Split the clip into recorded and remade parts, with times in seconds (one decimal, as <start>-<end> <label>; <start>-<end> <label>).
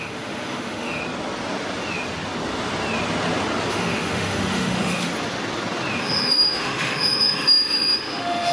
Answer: 0.0-1.0 remade; 1.0-3.7 recorded; 3.7-5.1 remade; 5.1-6.0 recorded; 6.0-8.5 remade